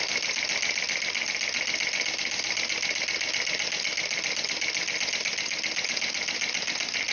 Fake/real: real